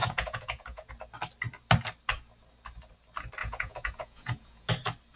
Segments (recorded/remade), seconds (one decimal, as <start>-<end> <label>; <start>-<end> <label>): 0.0-0.9 remade; 0.9-3.4 recorded; 3.4-4.7 remade; 4.7-5.2 recorded